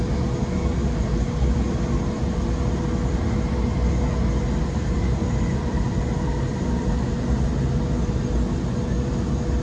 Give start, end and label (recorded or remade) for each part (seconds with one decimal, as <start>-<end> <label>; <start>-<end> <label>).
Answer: 0.0-4.6 recorded; 4.6-6.0 remade; 6.0-9.6 recorded